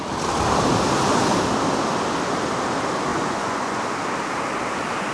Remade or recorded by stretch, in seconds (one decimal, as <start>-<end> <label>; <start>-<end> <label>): 0.0-3.1 recorded; 3.1-3.8 remade; 3.8-5.1 recorded